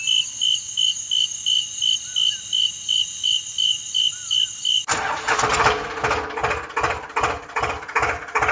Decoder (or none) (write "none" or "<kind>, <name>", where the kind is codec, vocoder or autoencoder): none